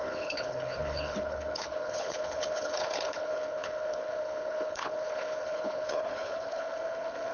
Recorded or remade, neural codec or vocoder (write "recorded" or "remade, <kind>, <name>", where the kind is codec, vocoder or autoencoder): remade, codec, HILCodec